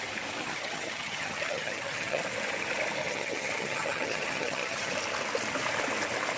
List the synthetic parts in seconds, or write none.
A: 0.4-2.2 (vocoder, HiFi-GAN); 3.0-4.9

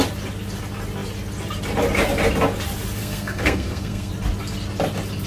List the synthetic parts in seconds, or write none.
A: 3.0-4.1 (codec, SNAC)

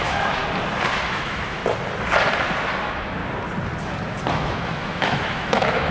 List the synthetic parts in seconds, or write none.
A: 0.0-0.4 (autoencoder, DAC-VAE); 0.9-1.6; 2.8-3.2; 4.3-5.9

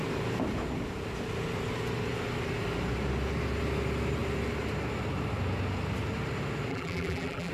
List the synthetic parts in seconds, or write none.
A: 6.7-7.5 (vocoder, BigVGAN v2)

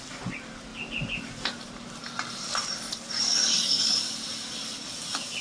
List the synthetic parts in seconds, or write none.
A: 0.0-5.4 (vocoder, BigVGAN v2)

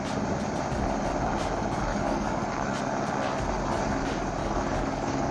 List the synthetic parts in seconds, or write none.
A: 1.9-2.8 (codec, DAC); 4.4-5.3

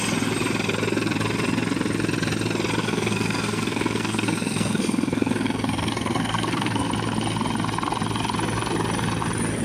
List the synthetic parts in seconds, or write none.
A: 2.8-6.9 (codec, SNAC)

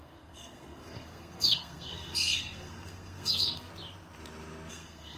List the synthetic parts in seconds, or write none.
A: 0.0-3.7 (codec, SNAC); 4.7-5.2